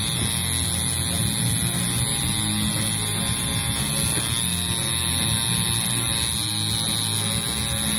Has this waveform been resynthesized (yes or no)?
no